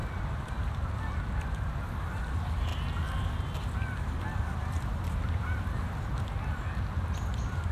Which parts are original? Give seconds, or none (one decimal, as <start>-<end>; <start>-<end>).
0.0-7.7